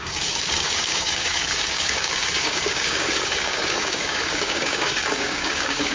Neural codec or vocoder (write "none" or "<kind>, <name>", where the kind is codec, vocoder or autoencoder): codec, DAC